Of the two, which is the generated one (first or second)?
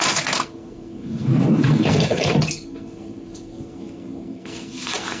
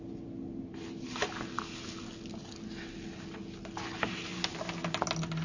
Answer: first